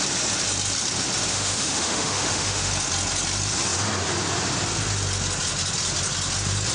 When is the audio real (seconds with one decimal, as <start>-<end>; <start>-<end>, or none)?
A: 0.0-1.3; 2.7-6.7